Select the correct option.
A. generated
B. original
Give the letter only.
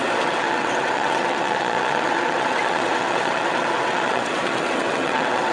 A